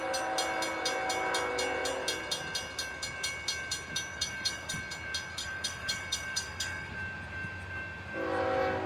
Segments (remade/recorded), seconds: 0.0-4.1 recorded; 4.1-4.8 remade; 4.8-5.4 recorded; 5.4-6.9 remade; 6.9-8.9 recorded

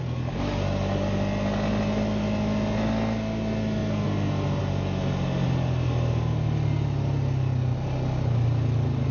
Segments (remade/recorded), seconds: 0.0-9.1 recorded

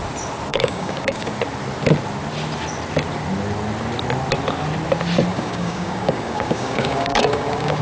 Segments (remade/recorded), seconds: 0.0-0.5 recorded; 0.5-1.3 remade; 1.3-5.3 recorded; 5.3-7.8 remade

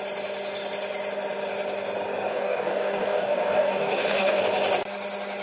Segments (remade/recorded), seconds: 0.0-2.3 recorded; 2.3-4.4 remade; 4.4-5.4 recorded